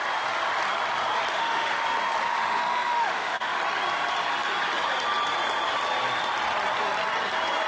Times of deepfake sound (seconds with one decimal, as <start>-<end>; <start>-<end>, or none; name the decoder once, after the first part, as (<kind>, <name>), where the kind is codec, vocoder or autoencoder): 1.3-1.8 (autoencoder, DAC-VAE); 2.3-3.6